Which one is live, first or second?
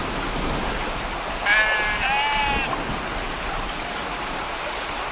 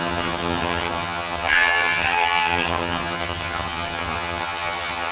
first